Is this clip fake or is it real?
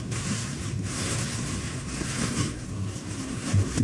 fake